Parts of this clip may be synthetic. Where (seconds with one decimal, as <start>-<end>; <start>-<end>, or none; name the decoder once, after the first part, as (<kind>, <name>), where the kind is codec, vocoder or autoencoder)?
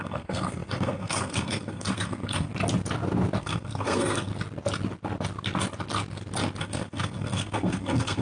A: 0.0-2.5 (codec, SNAC); 3.4-4.3; 6.6-8.2